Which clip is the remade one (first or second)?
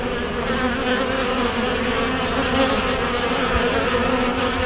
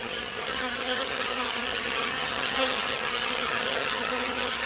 second